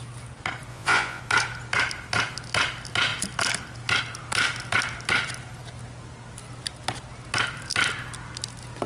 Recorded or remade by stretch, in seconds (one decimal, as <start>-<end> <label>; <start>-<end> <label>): 0.0-0.7 recorded; 0.7-1.2 remade; 1.2-8.9 recorded